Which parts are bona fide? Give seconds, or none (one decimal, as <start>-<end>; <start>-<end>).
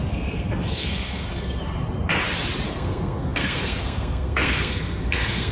1.6-2.7